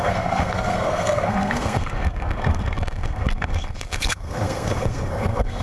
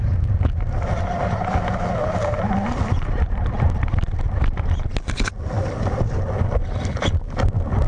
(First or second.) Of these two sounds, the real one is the second